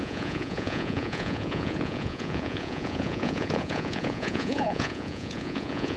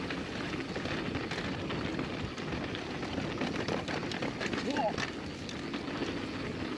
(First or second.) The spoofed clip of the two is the first